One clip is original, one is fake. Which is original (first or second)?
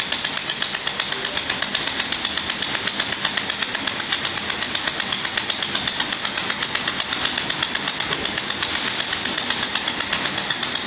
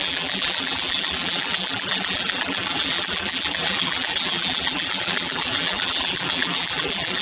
first